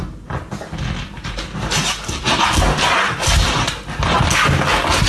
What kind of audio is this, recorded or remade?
recorded